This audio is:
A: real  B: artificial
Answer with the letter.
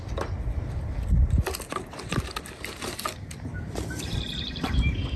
A